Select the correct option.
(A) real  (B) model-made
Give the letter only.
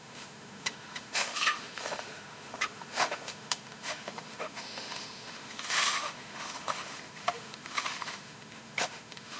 B